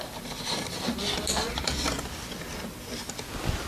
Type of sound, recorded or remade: recorded